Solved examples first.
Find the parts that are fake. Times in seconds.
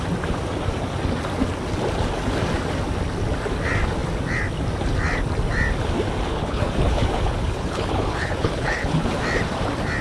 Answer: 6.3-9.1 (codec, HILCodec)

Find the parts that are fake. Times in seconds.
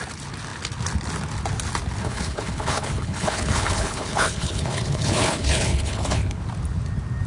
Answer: 2.0-6.4 (codec, HILCodec)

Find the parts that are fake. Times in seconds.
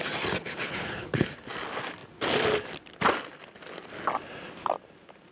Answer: 0.4-1.3 (codec, HILCodec)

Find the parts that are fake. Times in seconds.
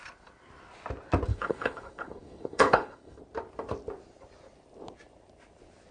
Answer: 1.3-3.2 (codec, HILCodec)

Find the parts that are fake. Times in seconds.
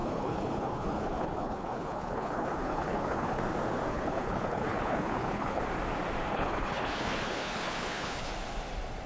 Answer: 0.0-3.4 (codec, HILCodec); 3.9-5.6; 6.3-8.3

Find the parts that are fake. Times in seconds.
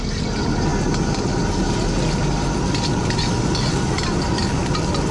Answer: none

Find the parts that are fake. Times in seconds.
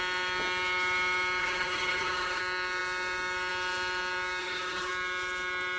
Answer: 1.4-2.4 (codec, HILCodec); 4.4-4.9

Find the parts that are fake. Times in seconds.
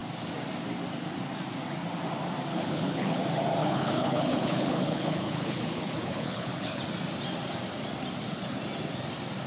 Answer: 2.5-3.2 (codec, HILCodec); 3.6-6.8